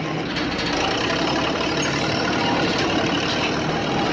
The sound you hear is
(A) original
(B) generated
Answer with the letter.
A